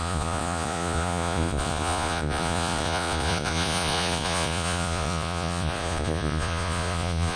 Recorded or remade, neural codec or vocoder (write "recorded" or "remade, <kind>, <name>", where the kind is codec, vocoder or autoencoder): remade, vocoder, Vocos